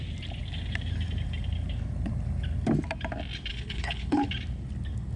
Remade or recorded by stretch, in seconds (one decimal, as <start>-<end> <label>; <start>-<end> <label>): 0.0-3.5 recorded; 3.5-4.3 remade; 4.3-5.2 recorded